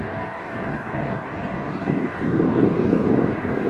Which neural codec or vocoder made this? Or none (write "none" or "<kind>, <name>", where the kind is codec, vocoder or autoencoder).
codec, DAC